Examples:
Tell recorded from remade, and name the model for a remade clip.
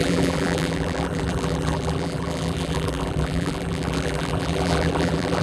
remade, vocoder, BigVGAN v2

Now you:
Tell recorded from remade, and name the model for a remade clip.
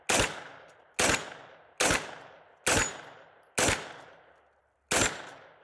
recorded